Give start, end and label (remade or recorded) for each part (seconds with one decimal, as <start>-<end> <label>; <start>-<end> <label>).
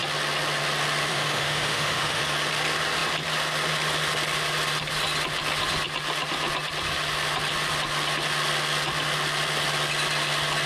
0.0-1.1 recorded; 1.1-2.2 remade; 2.2-10.7 recorded